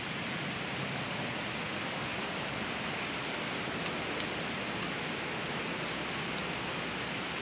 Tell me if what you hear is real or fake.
real